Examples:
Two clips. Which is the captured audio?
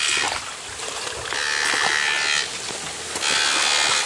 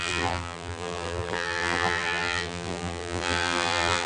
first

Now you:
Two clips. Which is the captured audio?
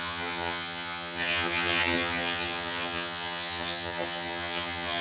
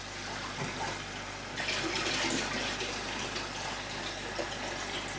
second